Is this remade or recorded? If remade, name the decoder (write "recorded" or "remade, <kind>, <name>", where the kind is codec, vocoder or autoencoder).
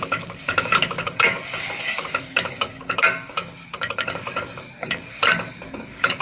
remade, codec, DAC